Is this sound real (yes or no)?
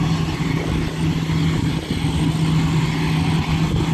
yes